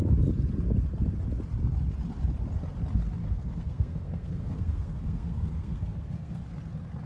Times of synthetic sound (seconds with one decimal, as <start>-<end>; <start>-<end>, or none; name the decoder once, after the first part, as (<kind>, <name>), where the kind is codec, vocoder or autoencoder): 3.2-6.4 (codec, SNAC)